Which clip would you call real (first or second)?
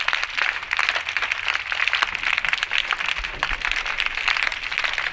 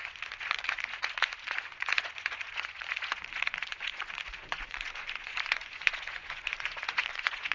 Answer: first